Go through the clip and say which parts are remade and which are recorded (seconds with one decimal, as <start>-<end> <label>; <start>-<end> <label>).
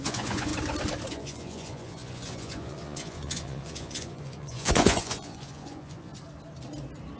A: 0.0-0.5 remade; 0.5-1.1 recorded; 1.1-6.1 remade; 6.1-7.2 recorded